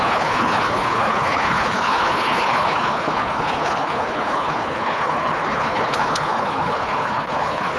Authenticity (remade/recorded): remade